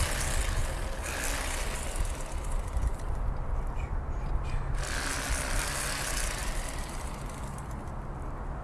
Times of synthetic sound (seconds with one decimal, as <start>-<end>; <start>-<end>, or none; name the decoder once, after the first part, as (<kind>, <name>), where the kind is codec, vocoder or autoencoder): none